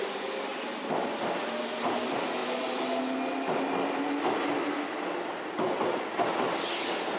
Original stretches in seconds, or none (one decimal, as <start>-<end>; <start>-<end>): 0.0-7.2

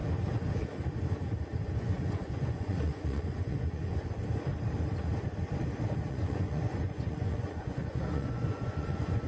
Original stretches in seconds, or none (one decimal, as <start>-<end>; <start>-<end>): 0.0-1.8; 3.9-6.1

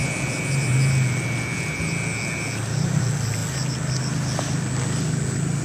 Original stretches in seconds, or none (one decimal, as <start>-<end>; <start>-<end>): 0.0-5.6

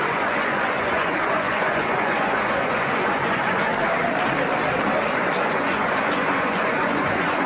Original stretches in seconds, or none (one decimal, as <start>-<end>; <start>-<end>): 3.7-5.4

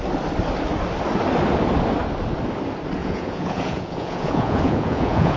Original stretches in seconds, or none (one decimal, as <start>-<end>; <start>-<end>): 0.0-3.0